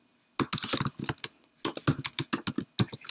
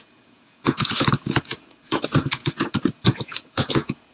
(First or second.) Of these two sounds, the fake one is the second